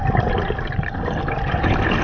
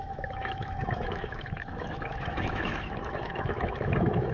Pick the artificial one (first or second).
second